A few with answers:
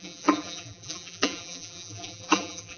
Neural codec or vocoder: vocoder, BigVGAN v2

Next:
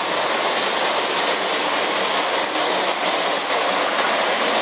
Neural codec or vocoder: none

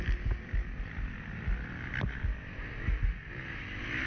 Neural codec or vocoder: none